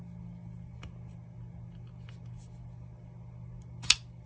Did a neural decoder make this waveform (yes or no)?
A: no